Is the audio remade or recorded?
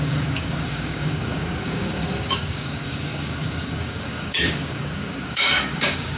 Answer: remade